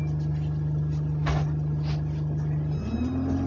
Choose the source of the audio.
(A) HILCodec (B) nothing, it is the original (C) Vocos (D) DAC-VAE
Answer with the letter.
B